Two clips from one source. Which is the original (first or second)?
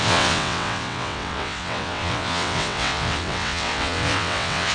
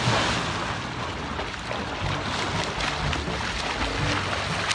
second